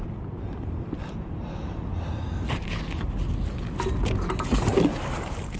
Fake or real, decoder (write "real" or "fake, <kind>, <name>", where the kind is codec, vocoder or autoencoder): real